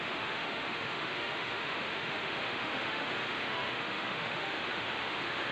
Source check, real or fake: fake